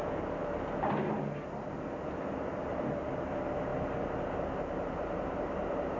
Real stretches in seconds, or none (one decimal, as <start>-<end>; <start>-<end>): 0.0-6.0